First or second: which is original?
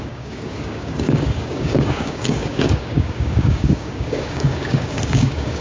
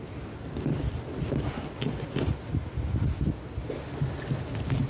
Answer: second